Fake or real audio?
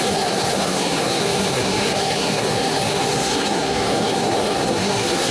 fake